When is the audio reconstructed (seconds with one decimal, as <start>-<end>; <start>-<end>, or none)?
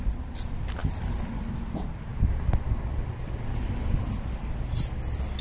none